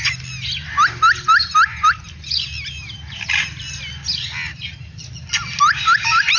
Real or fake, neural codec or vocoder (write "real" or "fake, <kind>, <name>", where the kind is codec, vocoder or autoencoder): real